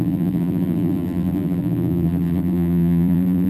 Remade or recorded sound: remade